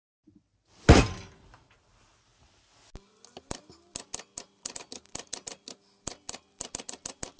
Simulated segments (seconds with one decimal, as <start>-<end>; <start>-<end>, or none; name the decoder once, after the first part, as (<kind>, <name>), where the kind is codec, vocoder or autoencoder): 0.0-2.3 (vocoder, BigVGAN v2); 4.4-7.4